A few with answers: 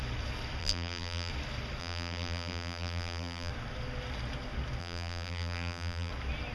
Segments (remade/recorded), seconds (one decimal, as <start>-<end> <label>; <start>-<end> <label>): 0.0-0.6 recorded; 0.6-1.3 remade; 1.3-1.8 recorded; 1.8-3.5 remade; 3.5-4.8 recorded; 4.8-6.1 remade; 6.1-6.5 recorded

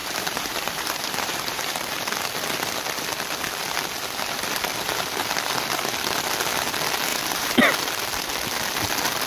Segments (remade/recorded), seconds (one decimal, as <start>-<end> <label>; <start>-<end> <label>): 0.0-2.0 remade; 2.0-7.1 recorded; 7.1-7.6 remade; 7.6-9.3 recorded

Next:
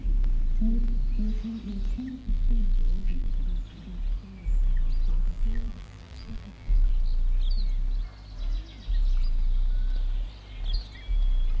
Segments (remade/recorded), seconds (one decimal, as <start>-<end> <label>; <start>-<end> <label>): 0.0-2.2 recorded; 2.2-3.3 remade; 3.3-5.3 recorded; 5.3-6.9 remade; 6.9-11.6 recorded

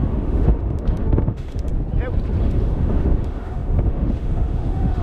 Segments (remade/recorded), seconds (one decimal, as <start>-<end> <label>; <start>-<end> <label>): 0.0-1.7 remade; 1.7-2.4 recorded; 2.4-5.0 remade

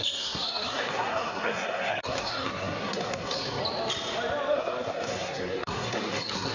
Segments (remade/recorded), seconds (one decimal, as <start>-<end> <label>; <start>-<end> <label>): 0.0-3.6 remade; 3.6-4.5 recorded; 4.5-6.5 remade